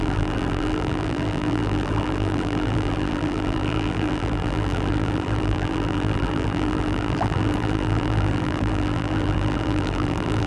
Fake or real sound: fake